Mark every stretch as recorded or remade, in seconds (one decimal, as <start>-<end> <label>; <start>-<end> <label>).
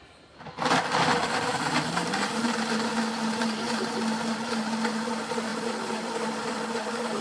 0.0-5.5 recorded; 5.5-7.2 remade